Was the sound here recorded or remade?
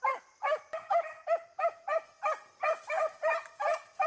recorded